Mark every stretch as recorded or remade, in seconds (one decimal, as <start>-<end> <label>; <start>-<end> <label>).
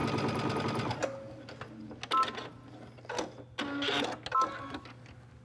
0.0-5.4 recorded